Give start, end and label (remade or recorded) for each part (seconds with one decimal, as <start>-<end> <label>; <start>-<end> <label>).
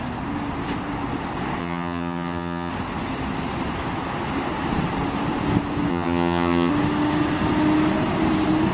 0.0-1.6 recorded; 1.6-2.7 remade; 2.7-5.9 recorded; 5.9-6.7 remade; 6.7-8.7 recorded